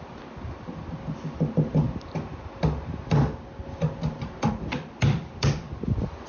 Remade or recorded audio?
recorded